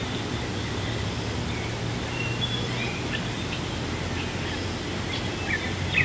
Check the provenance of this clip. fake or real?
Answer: real